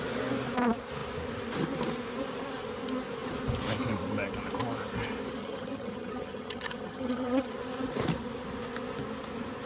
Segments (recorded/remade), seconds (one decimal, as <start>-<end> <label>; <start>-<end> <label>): 0.0-5.4 recorded; 5.4-7.5 remade; 7.5-9.7 recorded

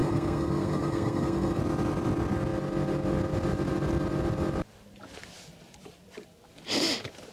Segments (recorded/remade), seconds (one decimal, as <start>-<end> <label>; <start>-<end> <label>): 0.0-1.6 remade; 1.6-7.3 recorded